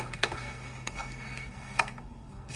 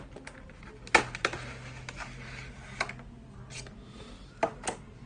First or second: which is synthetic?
first